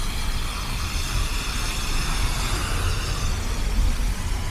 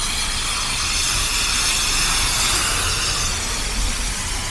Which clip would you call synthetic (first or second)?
first